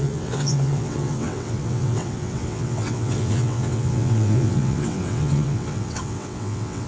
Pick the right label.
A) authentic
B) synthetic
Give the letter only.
B